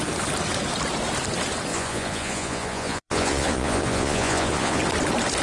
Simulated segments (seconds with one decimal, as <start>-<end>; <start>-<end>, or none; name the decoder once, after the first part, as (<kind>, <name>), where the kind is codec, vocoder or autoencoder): 1.7-4.8 (vocoder, Vocos)